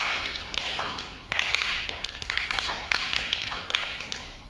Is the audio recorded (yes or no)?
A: no